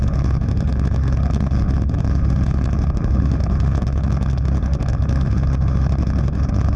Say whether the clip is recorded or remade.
remade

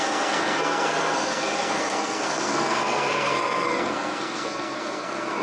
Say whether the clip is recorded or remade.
remade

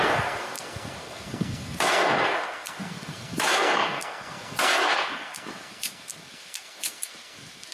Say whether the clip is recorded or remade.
remade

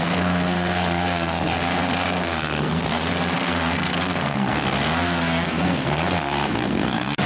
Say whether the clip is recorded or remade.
remade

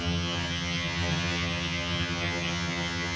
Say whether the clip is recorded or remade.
remade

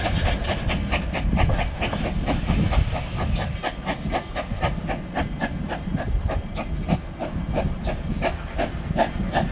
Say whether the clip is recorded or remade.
recorded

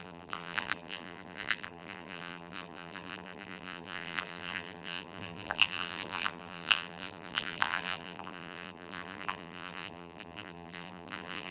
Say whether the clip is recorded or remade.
remade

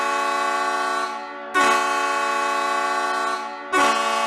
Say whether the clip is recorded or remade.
recorded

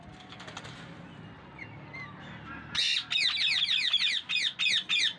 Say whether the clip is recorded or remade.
recorded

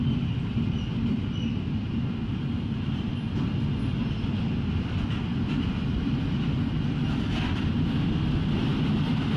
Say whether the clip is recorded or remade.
recorded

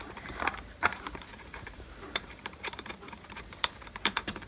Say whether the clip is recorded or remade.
remade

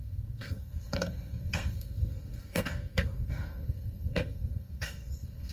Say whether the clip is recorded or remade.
remade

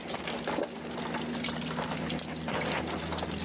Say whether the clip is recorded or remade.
recorded